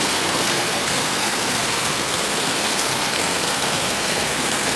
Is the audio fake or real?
fake